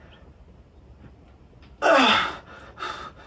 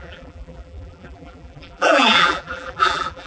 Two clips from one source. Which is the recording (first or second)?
first